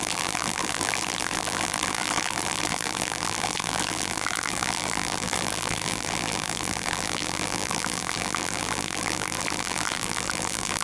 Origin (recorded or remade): remade